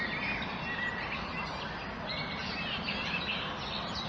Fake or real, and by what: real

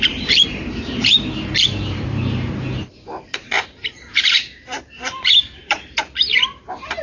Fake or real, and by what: fake, vocoder, BigVGAN v2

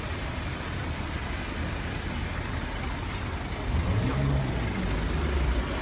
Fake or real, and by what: real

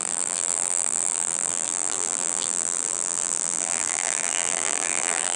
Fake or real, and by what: fake, vocoder, BigVGAN v2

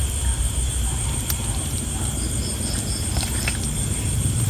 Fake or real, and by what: fake, vocoder, BigVGAN v2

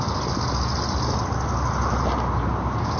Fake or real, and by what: real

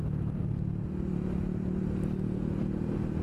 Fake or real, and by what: real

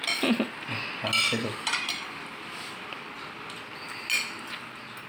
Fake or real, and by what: real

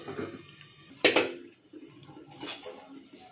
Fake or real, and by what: real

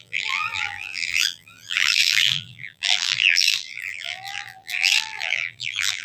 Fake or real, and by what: fake, vocoder, BigVGAN v2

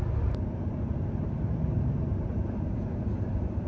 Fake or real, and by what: fake, vocoder, BigVGAN v2